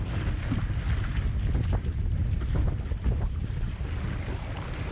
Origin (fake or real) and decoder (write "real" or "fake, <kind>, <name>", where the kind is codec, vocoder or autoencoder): real